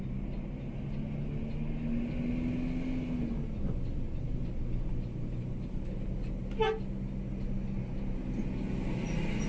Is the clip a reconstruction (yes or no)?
no